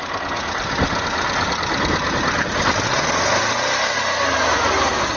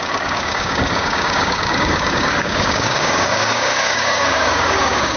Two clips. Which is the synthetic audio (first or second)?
second